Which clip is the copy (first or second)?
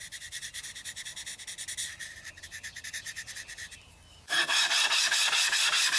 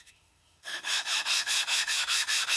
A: second